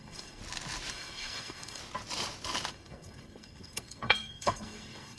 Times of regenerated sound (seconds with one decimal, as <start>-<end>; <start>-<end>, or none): 0.0-0.4; 0.9-1.8; 2.7-5.2